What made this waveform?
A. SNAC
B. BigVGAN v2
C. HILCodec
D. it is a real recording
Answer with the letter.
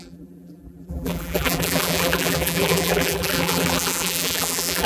B